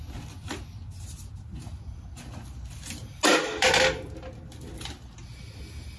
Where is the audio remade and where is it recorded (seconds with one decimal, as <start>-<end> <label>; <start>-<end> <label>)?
0.0-6.0 recorded